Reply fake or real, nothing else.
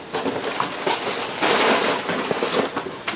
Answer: real